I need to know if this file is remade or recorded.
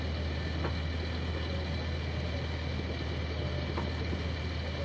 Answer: recorded